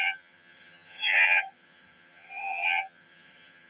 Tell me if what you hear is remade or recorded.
remade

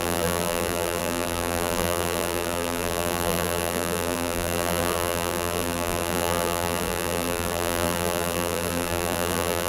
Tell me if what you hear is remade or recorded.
remade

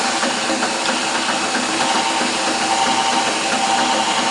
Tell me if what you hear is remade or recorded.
recorded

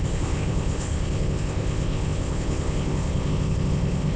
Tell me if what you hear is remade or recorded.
remade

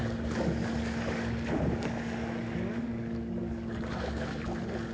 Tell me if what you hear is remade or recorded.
remade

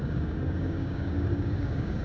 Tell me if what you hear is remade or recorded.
remade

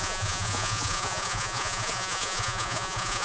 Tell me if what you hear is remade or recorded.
remade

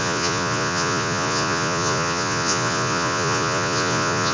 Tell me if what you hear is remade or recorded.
remade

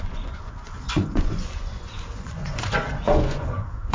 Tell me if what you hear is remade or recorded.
remade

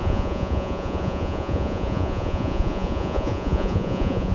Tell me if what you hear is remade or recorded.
remade